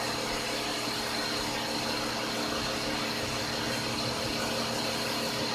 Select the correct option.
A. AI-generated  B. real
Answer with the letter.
B